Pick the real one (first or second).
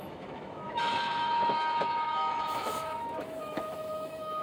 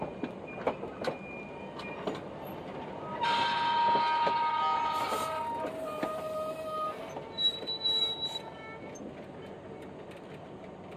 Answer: second